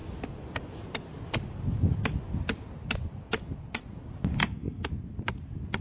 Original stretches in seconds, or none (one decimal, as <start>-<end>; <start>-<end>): 0.0-4.4; 4.9-5.8